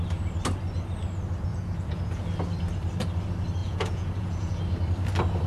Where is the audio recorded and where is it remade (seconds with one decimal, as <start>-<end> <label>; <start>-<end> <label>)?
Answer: 0.0-1.5 recorded; 1.5-2.2 remade; 2.2-3.6 recorded; 3.6-4.6 remade; 4.6-5.5 recorded